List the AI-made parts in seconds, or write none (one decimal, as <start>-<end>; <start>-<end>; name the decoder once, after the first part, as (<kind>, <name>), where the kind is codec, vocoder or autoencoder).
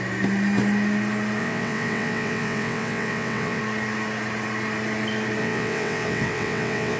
1.4-3.6 (vocoder, WaveNeXt); 5.4-7.0